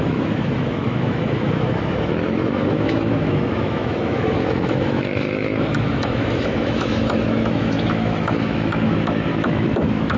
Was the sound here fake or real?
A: fake